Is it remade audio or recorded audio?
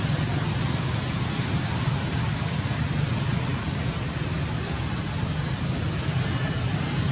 recorded